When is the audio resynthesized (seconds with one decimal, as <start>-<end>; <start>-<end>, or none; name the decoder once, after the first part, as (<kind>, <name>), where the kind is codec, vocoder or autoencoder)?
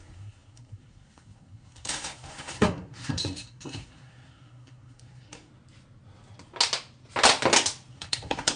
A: 0.0-5.5 (codec, SNAC); 7.9-8.6